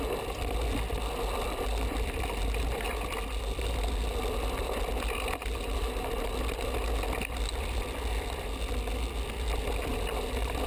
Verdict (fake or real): real